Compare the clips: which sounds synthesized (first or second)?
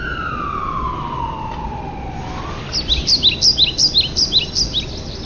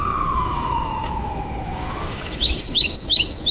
second